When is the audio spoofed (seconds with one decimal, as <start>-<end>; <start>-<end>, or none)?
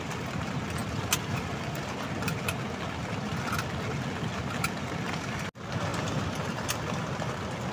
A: 0.8-1.9; 5.9-7.0